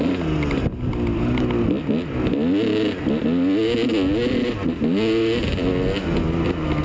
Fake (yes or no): no